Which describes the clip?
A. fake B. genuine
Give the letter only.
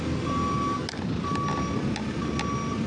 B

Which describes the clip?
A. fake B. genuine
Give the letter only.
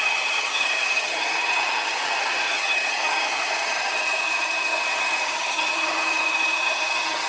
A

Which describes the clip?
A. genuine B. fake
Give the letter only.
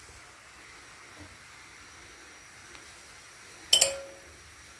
A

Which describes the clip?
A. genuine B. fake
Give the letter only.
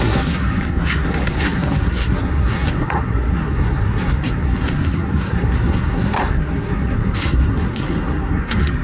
B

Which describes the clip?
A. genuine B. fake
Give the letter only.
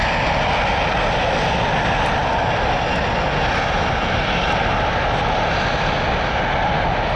A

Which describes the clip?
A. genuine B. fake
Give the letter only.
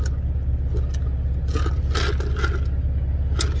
A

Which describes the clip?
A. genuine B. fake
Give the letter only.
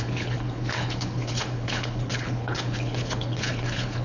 B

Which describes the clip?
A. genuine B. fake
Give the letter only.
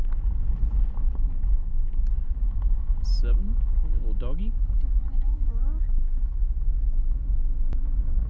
A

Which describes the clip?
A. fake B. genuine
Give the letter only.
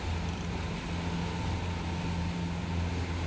B